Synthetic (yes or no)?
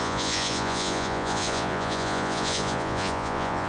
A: yes